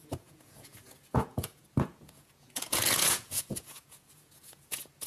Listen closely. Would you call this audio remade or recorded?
remade